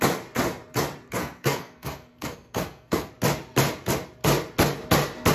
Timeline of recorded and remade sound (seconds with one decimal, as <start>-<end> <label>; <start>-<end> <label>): 0.0-1.2 recorded; 1.2-3.1 remade; 3.1-5.3 recorded